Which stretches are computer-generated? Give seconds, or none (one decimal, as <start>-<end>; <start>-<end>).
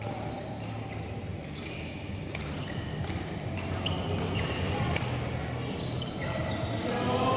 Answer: none